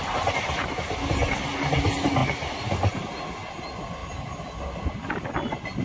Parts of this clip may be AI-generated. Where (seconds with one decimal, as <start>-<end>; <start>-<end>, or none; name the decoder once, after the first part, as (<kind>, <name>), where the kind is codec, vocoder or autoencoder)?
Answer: none